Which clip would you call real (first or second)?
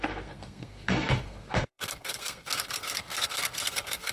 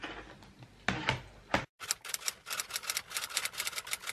second